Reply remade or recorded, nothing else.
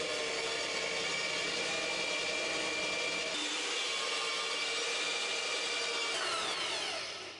recorded